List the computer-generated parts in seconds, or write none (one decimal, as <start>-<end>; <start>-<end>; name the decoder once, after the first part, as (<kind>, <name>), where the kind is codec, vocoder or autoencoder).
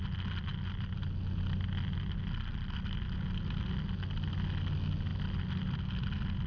none